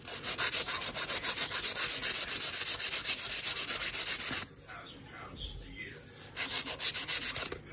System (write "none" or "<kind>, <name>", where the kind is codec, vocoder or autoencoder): none